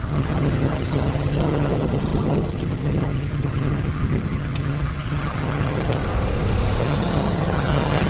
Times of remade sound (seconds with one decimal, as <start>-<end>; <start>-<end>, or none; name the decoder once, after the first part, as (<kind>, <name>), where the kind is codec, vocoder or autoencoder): 0.0-6.0 (vocoder, HiFi-GAN); 6.8-8.1